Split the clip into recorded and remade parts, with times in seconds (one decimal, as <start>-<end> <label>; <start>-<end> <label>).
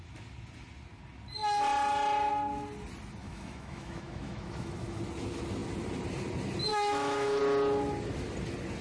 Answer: 0.0-3.2 recorded; 3.2-5.0 remade; 5.0-6.7 recorded; 6.7-7.4 remade; 7.4-8.8 recorded